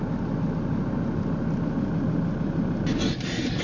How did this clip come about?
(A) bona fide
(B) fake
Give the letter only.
A